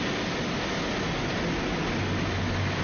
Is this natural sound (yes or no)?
yes